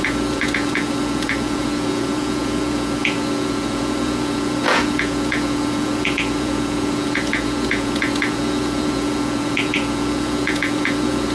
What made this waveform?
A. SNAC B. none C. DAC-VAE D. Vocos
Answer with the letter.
D